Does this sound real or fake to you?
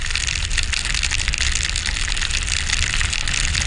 real